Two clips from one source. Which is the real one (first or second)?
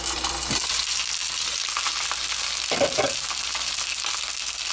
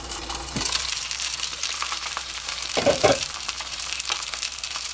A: first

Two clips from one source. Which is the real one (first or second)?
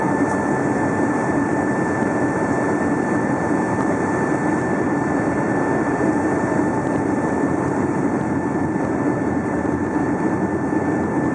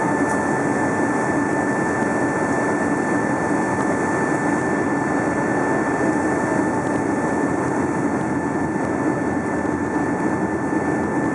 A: second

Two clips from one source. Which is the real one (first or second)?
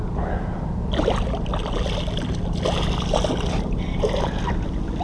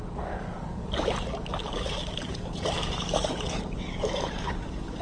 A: first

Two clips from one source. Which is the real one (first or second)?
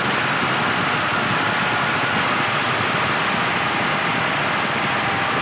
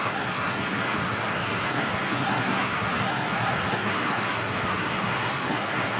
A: first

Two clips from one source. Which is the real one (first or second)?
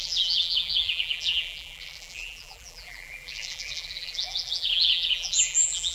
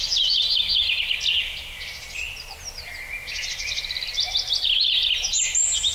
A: second